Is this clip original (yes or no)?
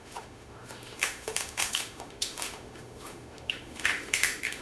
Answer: no